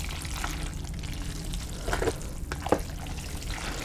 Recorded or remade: recorded